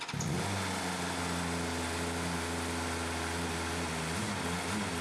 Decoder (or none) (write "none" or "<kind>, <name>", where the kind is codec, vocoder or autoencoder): none